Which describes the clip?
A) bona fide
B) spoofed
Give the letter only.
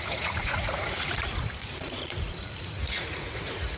B